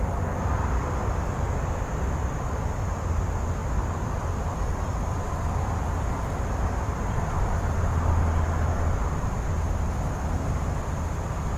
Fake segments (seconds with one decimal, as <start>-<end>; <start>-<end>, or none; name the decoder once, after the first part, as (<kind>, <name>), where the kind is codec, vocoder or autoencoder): none